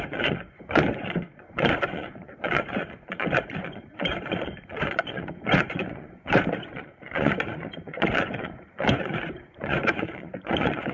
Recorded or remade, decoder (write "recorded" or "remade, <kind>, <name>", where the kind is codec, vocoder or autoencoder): remade, vocoder, Vocos